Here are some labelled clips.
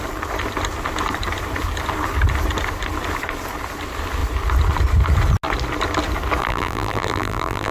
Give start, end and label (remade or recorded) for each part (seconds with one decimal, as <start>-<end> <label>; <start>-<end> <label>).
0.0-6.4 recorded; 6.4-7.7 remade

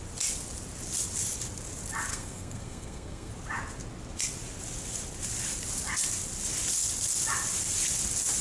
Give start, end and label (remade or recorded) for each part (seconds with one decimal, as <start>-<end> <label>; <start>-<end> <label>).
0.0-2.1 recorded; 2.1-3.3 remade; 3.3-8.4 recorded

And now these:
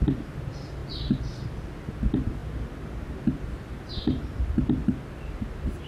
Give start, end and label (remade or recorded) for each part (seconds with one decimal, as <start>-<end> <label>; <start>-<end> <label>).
0.0-5.9 recorded

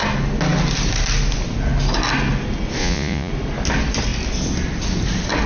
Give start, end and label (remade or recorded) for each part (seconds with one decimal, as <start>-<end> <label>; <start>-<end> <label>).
0.0-2.8 recorded; 2.8-3.3 remade; 3.3-5.5 recorded

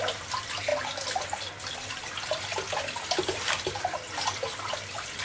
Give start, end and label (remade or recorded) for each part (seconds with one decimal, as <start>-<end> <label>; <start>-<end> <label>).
0.0-5.2 recorded

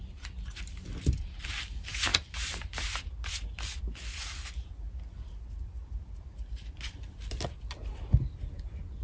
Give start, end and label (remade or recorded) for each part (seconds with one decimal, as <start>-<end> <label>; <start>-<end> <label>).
0.0-2.1 recorded; 2.1-3.8 remade; 3.8-9.0 recorded

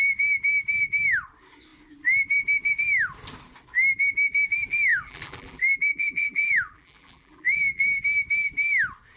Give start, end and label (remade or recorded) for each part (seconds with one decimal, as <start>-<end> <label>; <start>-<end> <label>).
0.0-4.9 recorded; 4.9-8.0 remade; 8.0-9.2 recorded

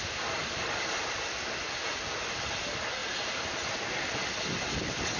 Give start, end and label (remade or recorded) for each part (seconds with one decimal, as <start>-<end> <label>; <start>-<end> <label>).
0.0-5.2 recorded